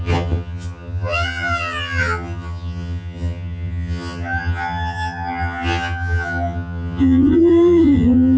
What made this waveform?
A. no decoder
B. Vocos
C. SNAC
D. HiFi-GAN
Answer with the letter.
D